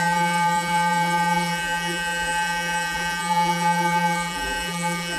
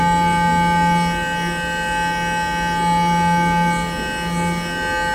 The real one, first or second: second